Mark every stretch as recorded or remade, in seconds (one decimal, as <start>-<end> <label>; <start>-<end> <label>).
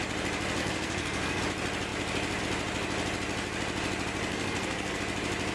0.0-0.6 recorded; 0.6-1.4 remade; 1.4-4.3 recorded; 4.3-5.0 remade; 5.0-5.5 recorded